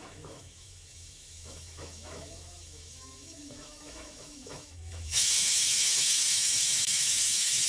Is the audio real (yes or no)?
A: no